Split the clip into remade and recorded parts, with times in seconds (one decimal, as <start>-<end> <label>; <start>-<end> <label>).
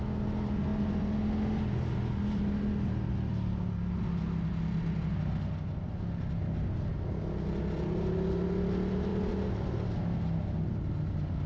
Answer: 0.0-11.5 recorded